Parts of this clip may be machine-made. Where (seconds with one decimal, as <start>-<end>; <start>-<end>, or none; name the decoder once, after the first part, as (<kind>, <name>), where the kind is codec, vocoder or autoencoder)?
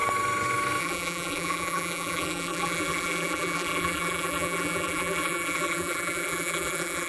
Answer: 0.8-7.1 (vocoder, BigVGAN v2)